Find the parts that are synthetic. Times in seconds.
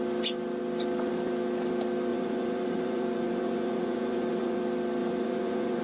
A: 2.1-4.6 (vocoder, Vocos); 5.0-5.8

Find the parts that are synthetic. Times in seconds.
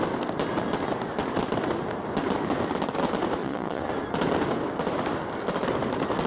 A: 3.4-3.9 (vocoder, Vocos)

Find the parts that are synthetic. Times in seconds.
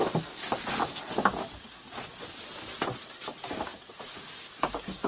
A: 3.7-4.3 (vocoder, Vocos)